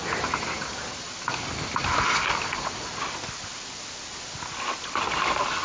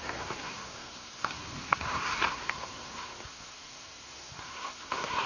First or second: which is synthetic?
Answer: second